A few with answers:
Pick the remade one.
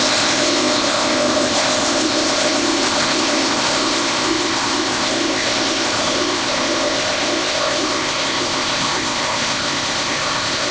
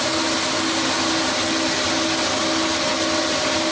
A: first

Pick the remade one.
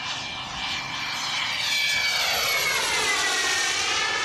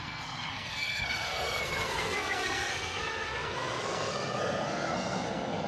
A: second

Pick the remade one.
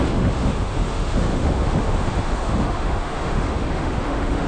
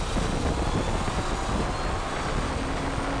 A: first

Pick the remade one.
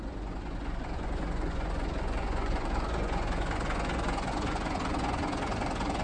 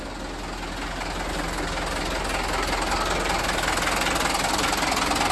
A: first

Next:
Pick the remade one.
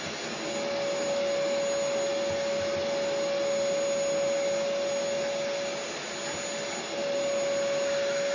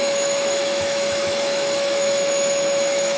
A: second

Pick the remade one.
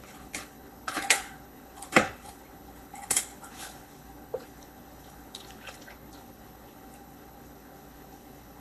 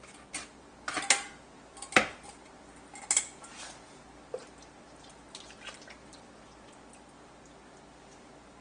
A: first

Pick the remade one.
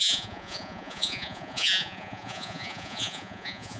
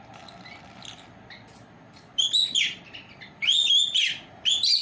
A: first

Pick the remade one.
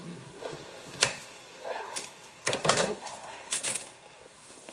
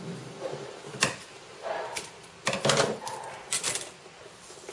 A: first